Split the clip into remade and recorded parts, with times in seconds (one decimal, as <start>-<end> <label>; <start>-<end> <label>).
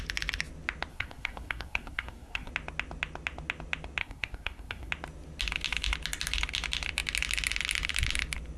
0.0-0.9 recorded; 0.9-2.5 remade; 2.5-4.0 recorded; 4.0-4.9 remade; 4.9-8.6 recorded